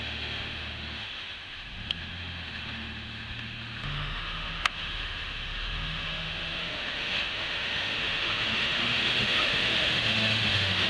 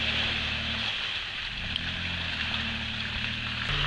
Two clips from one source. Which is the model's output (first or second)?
first